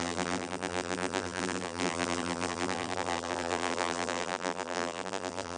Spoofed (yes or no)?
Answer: yes